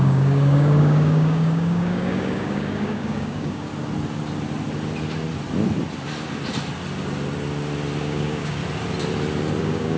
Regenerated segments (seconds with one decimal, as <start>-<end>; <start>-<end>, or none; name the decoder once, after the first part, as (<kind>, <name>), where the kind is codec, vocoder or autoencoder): 0.0-3.7 (codec, DAC); 8.0-8.6; 9.6-10.0